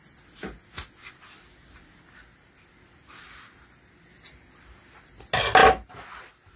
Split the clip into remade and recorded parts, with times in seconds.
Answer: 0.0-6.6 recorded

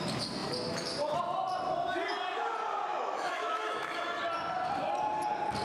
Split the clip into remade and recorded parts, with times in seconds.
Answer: 0.0-2.9 recorded; 2.9-4.2 remade; 4.2-5.6 recorded

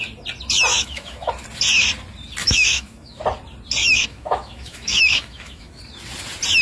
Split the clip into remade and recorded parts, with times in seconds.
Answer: 0.0-0.7 recorded; 0.7-1.3 remade; 1.3-2.4 recorded; 2.4-3.2 remade; 3.2-3.8 recorded; 3.8-5.8 remade; 5.8-6.6 recorded

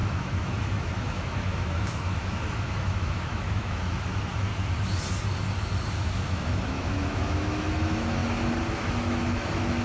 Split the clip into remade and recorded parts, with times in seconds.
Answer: 0.0-4.5 remade; 4.5-5.9 recorded; 5.9-8.2 remade; 8.2-8.7 recorded; 8.7-9.8 remade

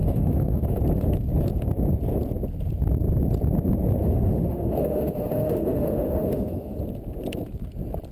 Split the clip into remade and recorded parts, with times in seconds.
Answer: 0.0-0.8 remade; 0.8-4.0 recorded; 4.0-6.8 remade; 6.8-8.1 recorded

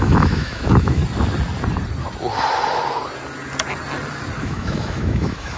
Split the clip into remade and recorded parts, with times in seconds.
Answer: 0.0-1.0 remade; 1.0-4.4 recorded; 4.4-5.6 remade

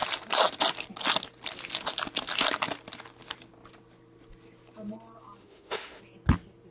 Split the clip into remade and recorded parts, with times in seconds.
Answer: 0.0-5.4 recorded; 5.4-6.0 remade; 6.0-6.7 recorded